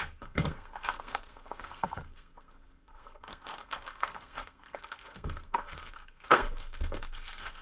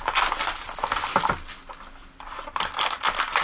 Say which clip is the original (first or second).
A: second